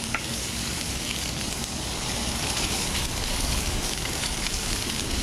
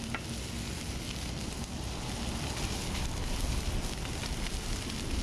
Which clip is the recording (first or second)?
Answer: second